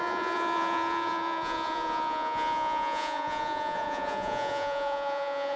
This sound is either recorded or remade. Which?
remade